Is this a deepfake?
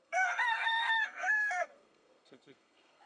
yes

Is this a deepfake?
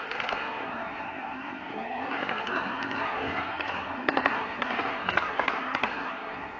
yes